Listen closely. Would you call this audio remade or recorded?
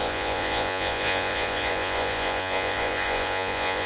remade